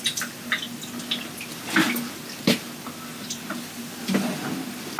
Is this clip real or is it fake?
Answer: real